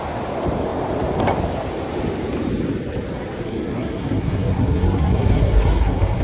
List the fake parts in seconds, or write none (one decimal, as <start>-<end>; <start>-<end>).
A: 3.4-6.2